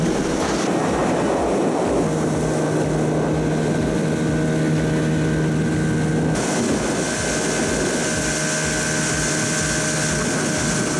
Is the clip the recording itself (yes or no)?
yes